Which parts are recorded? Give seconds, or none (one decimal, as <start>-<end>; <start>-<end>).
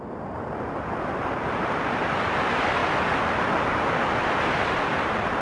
0.0-5.4